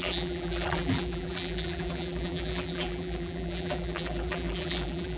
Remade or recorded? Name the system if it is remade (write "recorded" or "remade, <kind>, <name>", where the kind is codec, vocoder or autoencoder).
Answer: remade, vocoder, BigVGAN v2